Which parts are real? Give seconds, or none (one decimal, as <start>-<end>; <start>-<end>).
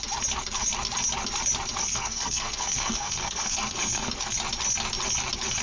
0.0-1.8; 4.1-5.6